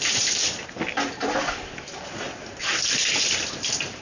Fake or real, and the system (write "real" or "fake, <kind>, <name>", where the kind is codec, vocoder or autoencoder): real